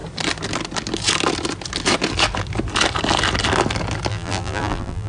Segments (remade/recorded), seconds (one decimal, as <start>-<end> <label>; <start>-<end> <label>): 0.0-4.1 recorded; 4.1-5.1 remade